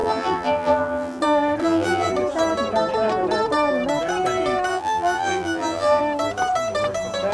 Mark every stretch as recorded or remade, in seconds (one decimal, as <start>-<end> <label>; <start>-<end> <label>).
0.0-1.2 remade; 1.2-1.6 recorded; 1.6-2.1 remade; 2.1-4.7 recorded; 4.7-6.0 remade; 6.0-7.3 recorded